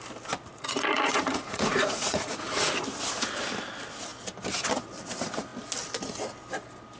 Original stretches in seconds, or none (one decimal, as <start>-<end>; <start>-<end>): 0.0-0.5; 2.7-7.0

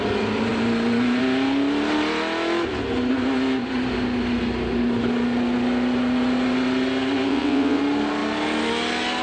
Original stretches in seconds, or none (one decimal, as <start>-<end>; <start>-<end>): 0.0-7.3; 7.8-9.2